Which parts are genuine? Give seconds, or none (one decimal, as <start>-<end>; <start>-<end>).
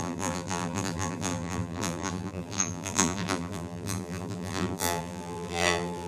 none